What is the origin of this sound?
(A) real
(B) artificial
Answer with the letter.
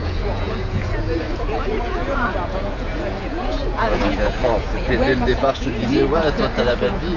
B